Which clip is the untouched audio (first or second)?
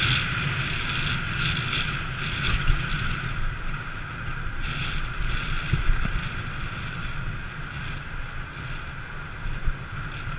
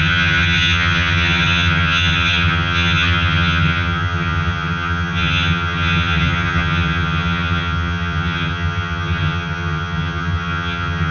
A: first